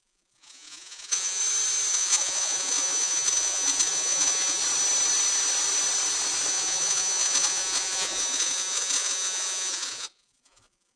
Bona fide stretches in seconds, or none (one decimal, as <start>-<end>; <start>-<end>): 1.4-1.9; 4.6-6.5